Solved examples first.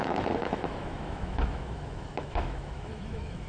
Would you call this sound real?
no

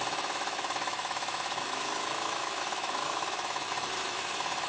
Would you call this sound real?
no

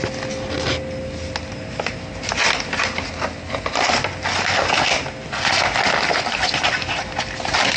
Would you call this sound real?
yes